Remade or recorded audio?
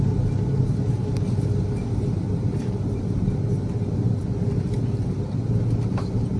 recorded